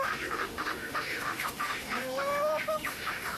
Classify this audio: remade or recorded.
remade